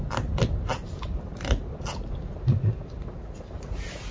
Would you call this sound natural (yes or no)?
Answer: yes